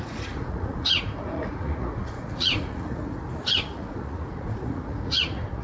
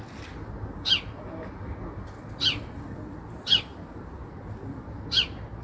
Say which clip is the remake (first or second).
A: first